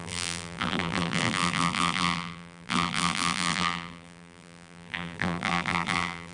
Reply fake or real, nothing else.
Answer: fake